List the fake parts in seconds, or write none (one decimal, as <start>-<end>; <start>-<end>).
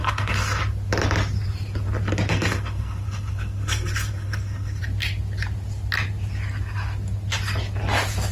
0.0-0.6; 2.3-4.8